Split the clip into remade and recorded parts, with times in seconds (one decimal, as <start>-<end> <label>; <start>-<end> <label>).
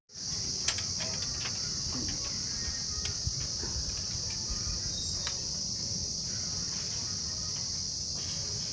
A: 0.0-8.7 recorded